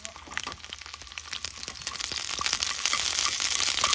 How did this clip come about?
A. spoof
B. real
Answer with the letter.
B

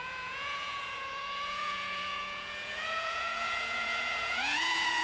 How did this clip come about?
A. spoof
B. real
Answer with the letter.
A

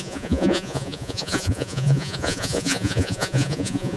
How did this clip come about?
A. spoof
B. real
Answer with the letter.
A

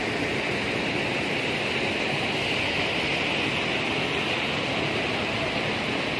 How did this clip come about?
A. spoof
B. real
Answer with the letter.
B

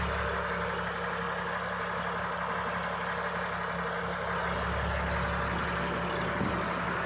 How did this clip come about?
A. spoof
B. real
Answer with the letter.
B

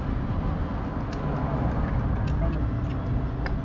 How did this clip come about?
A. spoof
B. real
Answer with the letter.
B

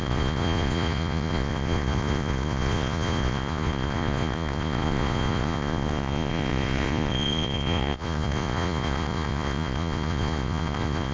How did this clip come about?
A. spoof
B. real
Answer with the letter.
A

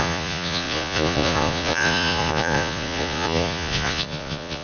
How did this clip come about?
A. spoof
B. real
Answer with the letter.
A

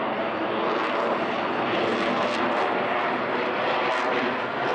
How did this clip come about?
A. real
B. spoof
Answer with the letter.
A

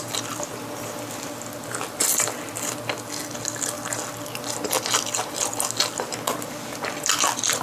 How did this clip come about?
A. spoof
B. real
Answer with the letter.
B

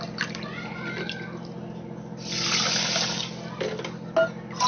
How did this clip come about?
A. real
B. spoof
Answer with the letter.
A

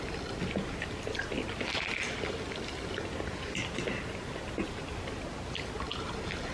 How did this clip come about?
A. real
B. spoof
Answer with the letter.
A